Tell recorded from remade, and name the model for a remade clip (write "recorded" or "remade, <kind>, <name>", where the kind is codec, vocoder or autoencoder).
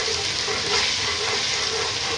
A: recorded